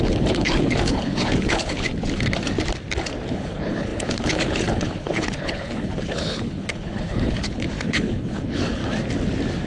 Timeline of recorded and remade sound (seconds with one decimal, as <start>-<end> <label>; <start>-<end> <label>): 0.0-1.9 remade; 1.9-3.3 recorded; 3.3-8.8 remade; 8.8-9.7 recorded